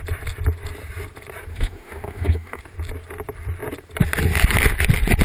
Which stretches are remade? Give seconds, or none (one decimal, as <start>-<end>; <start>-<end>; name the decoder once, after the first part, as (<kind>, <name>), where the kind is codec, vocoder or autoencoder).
1.5-2.6 (autoencoder, DAC-VAE)